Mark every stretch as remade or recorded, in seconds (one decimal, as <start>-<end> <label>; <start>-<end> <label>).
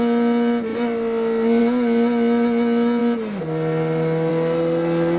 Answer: 0.0-5.2 recorded